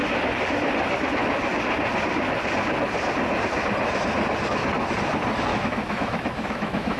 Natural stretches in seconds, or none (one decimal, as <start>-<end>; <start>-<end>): 0.0-5.5